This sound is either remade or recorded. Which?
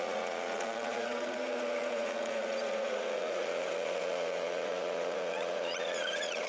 remade